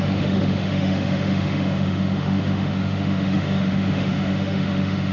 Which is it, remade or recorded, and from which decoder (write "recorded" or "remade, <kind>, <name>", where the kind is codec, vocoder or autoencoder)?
remade, autoencoder, DAC-VAE